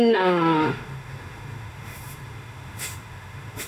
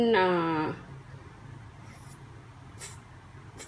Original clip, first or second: second